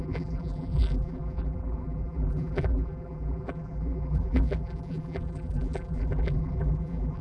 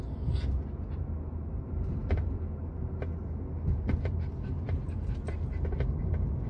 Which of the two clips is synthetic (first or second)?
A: first